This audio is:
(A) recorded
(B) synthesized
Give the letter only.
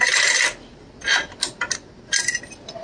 A